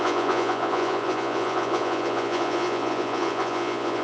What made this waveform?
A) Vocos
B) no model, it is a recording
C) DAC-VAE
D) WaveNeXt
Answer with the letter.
A